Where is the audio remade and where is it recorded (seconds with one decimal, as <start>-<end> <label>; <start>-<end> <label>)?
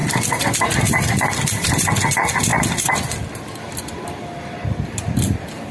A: 0.0-2.5 remade; 2.5-3.8 recorded; 3.8-5.7 remade